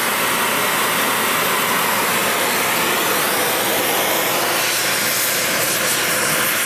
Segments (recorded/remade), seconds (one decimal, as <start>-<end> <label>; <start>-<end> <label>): 0.0-6.7 recorded